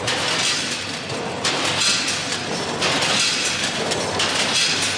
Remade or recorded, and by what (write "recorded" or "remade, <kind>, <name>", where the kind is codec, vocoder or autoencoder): recorded